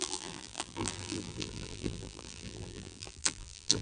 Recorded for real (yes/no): no